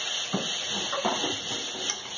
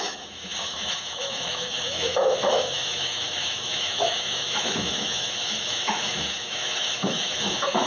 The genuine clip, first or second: first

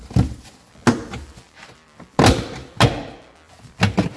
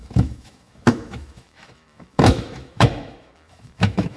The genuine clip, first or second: first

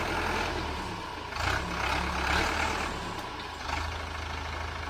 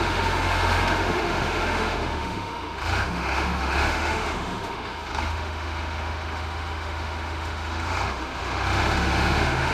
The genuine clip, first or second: first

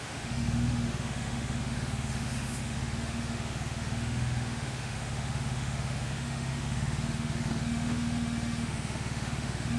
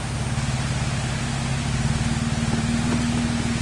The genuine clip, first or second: second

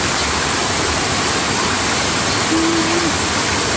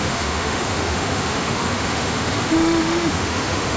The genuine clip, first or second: first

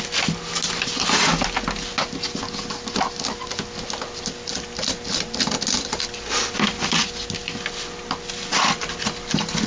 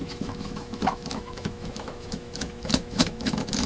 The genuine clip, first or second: first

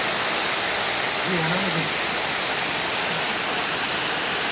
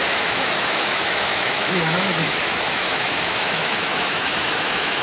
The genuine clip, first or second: first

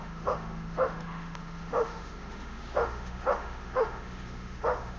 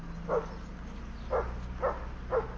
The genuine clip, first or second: second